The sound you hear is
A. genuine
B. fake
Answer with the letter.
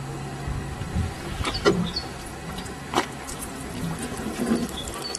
A